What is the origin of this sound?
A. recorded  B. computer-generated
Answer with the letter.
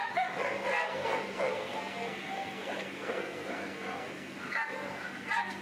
B